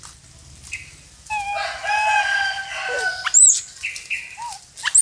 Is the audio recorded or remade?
recorded